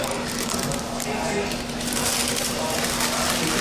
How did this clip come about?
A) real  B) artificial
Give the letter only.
A